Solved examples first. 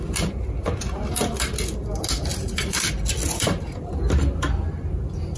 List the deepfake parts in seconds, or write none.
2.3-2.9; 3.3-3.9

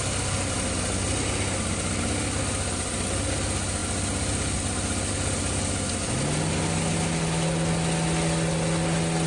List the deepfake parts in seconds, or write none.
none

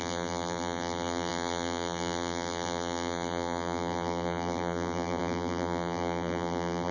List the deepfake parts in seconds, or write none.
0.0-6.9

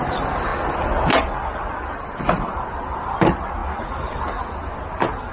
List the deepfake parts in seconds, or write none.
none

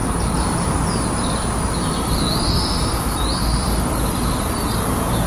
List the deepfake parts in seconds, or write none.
0.0-3.2

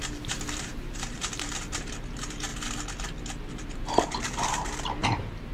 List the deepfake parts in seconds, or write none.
0.0-2.5; 3.5-5.5

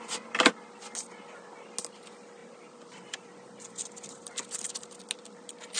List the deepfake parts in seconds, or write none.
2.4-4.8